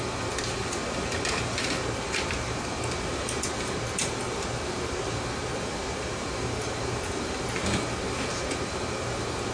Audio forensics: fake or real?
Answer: fake